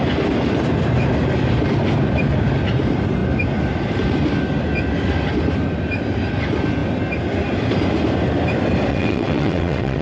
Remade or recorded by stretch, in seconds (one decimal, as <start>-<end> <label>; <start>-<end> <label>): 0.0-8.9 recorded; 8.9-10.0 remade